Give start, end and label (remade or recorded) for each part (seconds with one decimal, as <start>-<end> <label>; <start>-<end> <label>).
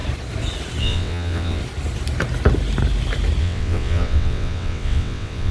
0.0-0.8 recorded; 0.8-1.6 remade; 1.6-3.4 recorded; 3.4-5.5 remade